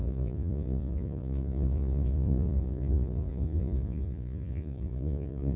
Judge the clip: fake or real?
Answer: fake